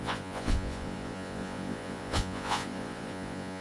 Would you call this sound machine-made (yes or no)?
yes